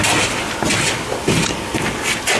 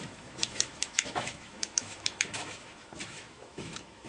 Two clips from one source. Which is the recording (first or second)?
first